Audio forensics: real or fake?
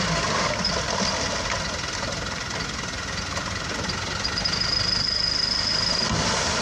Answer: real